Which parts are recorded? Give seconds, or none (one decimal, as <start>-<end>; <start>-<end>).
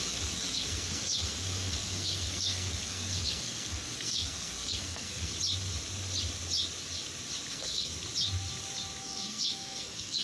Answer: 5.3-7.5; 7.9-9.0